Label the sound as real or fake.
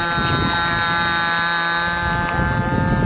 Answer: real